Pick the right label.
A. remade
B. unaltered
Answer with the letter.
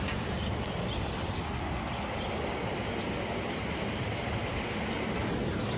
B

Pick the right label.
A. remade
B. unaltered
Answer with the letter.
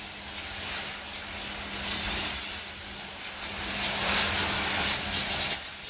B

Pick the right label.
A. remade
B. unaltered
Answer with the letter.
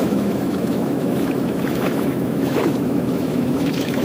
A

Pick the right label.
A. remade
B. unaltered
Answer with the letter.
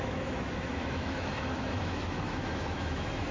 A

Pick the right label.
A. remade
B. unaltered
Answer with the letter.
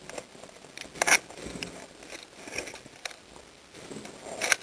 B